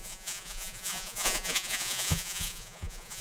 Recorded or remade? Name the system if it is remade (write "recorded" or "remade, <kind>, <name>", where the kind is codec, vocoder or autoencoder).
remade, vocoder, Vocos